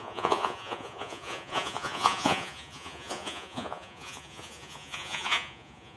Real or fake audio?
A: fake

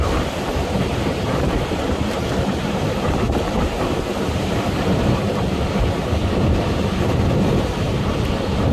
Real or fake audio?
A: fake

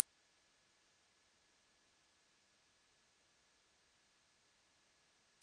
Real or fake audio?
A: real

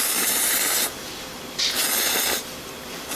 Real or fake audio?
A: real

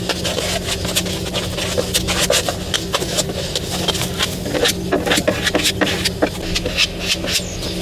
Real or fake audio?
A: real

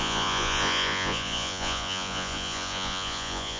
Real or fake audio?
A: fake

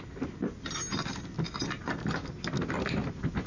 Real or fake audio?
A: real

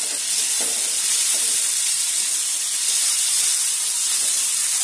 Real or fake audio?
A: real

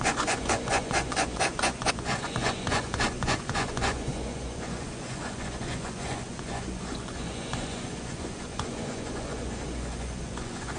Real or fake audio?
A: fake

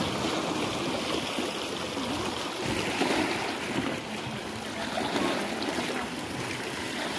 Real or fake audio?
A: real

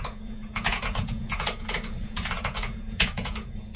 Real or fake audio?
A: fake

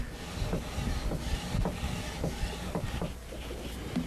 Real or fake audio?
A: real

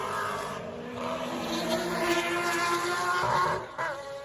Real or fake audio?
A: fake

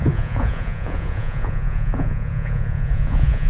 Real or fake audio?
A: fake